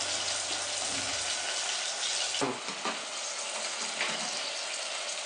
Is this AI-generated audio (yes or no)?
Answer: no